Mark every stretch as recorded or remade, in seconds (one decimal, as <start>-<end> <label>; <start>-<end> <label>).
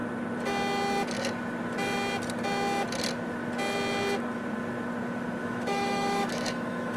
0.0-5.4 recorded; 5.4-7.0 remade